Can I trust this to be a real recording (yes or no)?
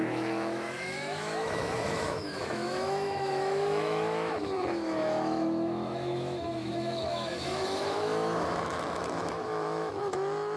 no